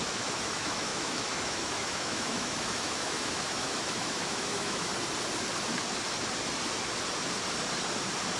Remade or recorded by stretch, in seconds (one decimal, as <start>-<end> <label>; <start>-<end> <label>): 0.0-4.9 remade; 4.9-8.4 recorded